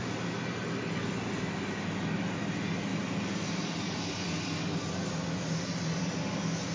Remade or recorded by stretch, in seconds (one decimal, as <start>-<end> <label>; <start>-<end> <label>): 0.0-0.6 remade; 0.6-2.9 recorded; 2.9-4.3 remade; 4.3-6.7 recorded

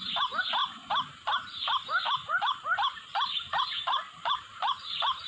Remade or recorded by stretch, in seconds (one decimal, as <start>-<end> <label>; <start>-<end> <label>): 0.0-5.3 remade

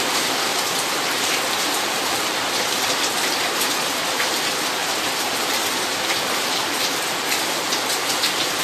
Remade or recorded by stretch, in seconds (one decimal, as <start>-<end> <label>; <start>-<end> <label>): 0.0-0.5 recorded; 0.5-2.5 remade; 2.5-4.8 recorded; 4.8-7.5 remade; 7.5-8.6 recorded

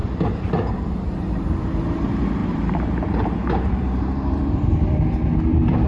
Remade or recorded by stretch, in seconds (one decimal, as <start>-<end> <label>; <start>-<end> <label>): 0.0-0.8 recorded; 0.8-5.9 remade

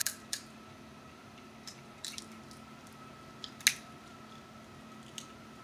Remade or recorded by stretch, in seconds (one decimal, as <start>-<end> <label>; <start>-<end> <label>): 0.0-2.2 remade; 2.2-5.6 recorded